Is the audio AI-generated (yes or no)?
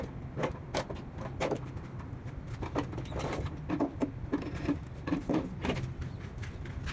no